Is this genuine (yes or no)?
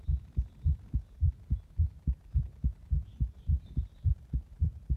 yes